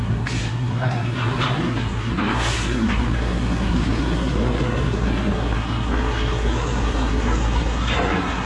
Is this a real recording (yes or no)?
no